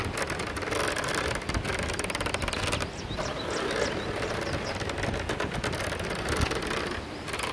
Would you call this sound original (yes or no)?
yes